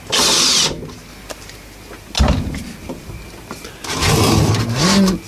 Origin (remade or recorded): recorded